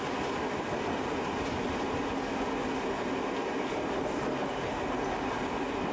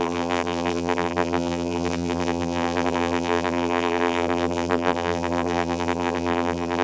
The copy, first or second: second